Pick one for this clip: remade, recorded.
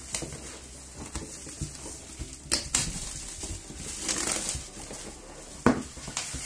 recorded